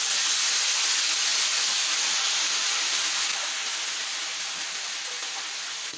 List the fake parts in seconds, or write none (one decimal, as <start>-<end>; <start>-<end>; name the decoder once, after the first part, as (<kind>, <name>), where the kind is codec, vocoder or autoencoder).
1.3-3.0 (vocoder, BigVGAN v2)